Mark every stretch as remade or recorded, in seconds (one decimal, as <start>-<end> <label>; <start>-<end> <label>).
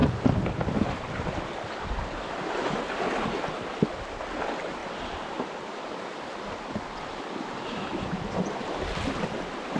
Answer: 0.0-1.9 remade; 1.9-4.8 recorded; 4.8-7.2 remade; 7.2-7.9 recorded; 7.9-9.8 remade